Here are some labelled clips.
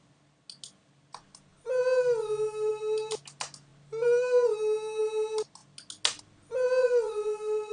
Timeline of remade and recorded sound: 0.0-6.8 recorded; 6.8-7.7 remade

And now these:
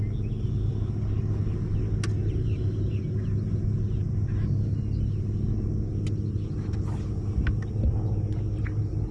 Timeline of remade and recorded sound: 0.0-2.3 recorded; 2.3-3.0 remade; 3.0-9.1 recorded

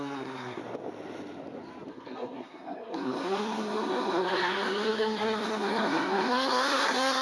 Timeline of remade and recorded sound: 0.0-0.6 remade; 0.6-1.9 recorded; 1.9-7.2 remade